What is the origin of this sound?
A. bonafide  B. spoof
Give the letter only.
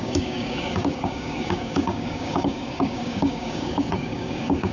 B